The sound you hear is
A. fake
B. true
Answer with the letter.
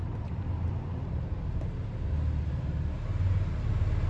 B